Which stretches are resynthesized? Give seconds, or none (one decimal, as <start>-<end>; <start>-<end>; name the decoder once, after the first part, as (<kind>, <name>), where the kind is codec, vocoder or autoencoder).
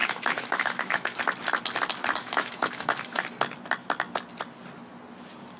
0.0-1.2 (autoencoder, DAC-VAE); 2.2-3.2